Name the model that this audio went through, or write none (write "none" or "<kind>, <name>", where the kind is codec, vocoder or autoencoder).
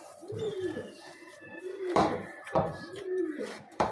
vocoder, BigVGAN v2